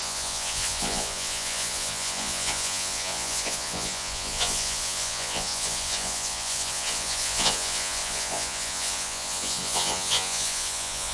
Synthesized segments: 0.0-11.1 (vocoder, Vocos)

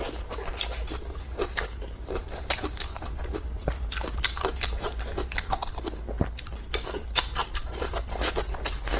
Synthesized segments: 7.4-8.0 (vocoder, BigVGAN v2)

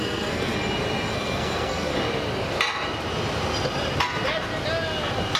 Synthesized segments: 0.0-0.5 (codec, SNAC); 1.1-1.9